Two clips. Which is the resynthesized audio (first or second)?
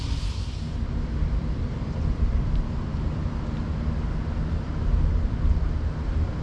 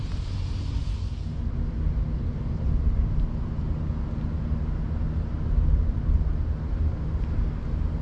first